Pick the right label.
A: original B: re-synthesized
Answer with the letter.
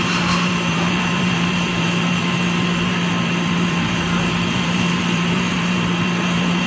B